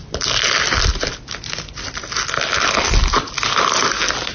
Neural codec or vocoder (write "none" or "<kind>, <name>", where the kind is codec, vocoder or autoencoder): none